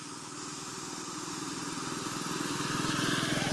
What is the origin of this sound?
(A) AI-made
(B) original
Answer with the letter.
B